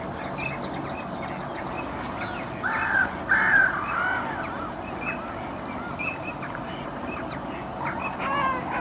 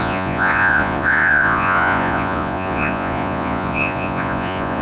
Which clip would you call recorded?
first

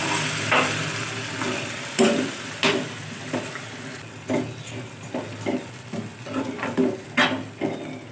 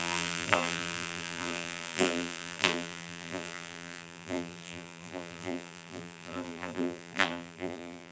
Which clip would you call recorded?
first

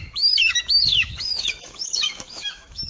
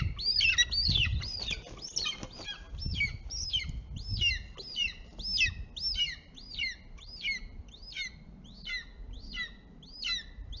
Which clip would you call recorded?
second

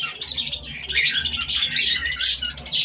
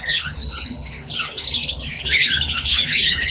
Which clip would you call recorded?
first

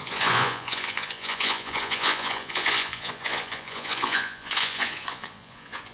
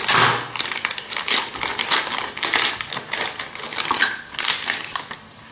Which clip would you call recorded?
second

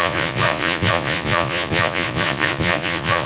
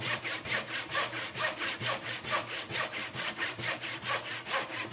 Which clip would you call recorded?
second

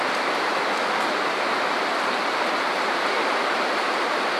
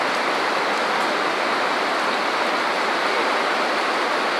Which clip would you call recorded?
second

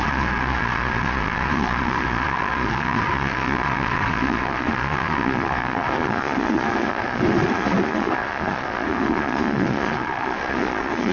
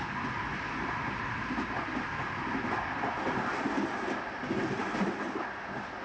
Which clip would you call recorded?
second